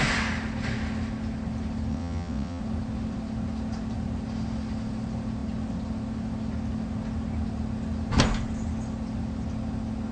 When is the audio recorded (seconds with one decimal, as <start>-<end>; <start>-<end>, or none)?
0.0-1.9; 2.6-10.1